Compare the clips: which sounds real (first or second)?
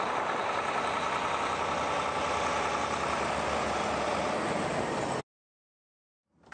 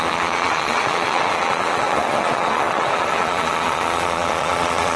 first